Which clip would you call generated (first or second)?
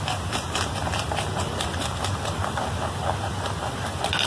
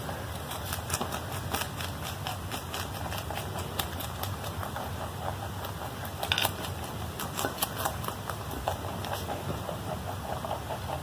first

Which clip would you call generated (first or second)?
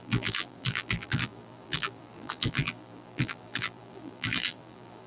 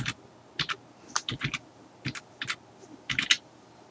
first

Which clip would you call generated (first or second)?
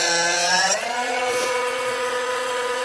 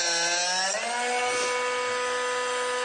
first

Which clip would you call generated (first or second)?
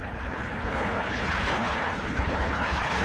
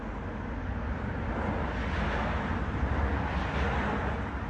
first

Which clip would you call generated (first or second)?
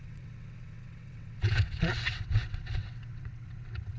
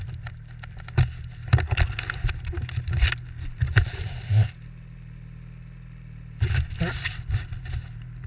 first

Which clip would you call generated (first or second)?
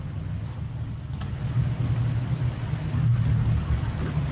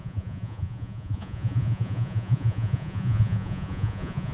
second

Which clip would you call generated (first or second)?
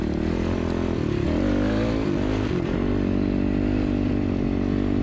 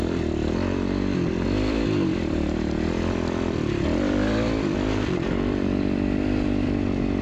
second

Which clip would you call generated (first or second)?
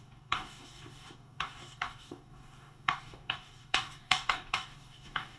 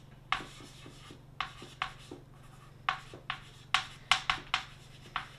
first